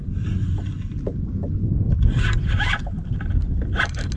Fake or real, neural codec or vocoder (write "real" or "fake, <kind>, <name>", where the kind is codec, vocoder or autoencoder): real